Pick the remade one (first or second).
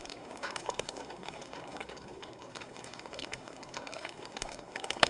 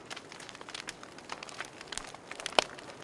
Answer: first